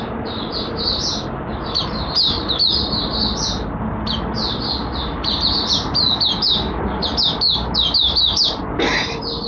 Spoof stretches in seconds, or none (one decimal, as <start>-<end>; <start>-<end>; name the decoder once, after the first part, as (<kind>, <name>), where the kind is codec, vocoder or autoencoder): none